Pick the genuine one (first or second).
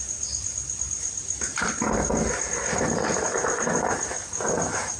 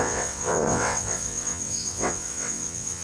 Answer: first